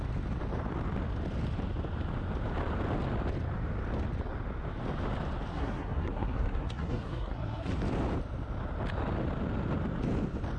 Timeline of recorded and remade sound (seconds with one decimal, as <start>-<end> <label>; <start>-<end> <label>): 0.0-5.5 recorded; 5.5-7.7 remade; 7.7-10.6 recorded